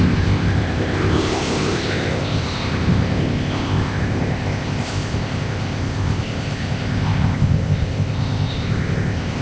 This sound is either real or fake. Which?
fake